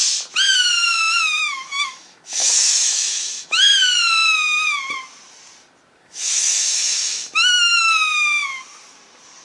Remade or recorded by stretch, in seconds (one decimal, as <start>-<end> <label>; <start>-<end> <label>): 0.0-1.4 recorded; 1.4-3.6 remade; 3.6-6.0 recorded; 6.0-7.9 remade; 7.9-9.4 recorded